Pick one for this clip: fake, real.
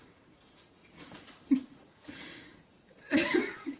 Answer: fake